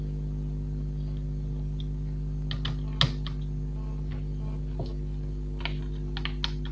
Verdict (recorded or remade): recorded